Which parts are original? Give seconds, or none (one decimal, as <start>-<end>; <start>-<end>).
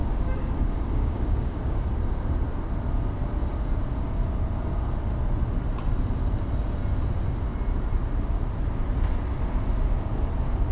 1.8-10.7